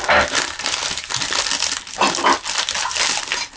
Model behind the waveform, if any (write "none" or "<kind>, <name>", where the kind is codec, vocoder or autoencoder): none